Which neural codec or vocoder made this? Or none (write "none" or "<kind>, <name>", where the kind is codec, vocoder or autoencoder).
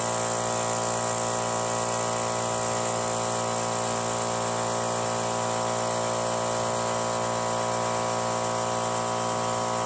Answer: none